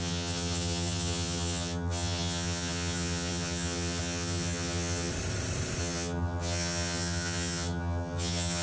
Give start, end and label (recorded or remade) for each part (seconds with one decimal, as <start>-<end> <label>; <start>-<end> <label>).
0.0-5.1 remade; 5.1-5.8 recorded; 5.8-8.6 remade